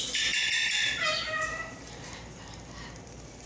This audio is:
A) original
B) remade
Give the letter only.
B